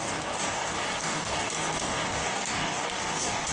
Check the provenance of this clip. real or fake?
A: fake